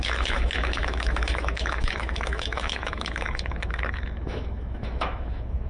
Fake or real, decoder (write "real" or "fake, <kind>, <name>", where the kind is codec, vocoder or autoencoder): fake, autoencoder, DAC-VAE